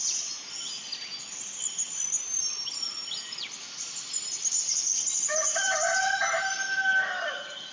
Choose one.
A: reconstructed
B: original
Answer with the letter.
B